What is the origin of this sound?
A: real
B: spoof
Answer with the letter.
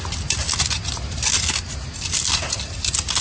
A